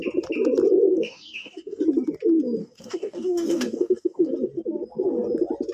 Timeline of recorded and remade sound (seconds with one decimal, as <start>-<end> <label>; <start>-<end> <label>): 0.0-0.9 recorded; 0.9-1.8 remade; 1.8-2.6 recorded; 2.6-4.3 remade; 4.3-5.7 recorded